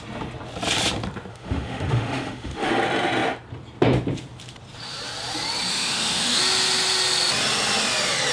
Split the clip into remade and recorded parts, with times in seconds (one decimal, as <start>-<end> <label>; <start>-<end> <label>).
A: 0.0-1.3 recorded; 1.3-2.7 remade; 2.7-5.7 recorded; 5.7-6.4 remade; 6.4-8.3 recorded